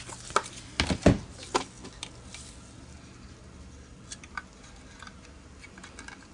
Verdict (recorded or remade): recorded